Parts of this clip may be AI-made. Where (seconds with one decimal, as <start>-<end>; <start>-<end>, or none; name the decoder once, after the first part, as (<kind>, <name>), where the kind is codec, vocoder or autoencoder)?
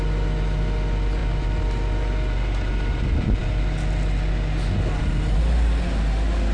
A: none